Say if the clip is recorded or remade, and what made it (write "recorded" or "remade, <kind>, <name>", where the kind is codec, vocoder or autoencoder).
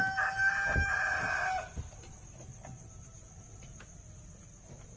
recorded